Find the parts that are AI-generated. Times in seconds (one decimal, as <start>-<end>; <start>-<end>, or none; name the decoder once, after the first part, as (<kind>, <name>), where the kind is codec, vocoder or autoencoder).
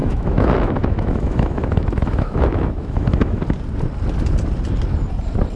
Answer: 0.0-3.4 (autoencoder, DAC-VAE)